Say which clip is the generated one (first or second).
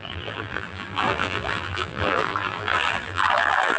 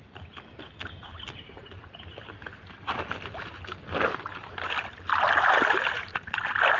first